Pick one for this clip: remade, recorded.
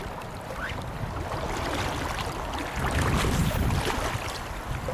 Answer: recorded